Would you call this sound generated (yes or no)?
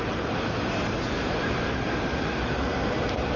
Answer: yes